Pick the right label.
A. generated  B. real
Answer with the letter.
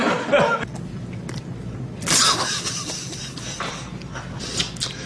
B